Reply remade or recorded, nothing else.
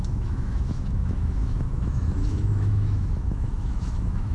remade